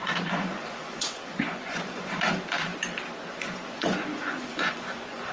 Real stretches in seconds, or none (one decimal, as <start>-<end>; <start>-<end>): 2.7-3.3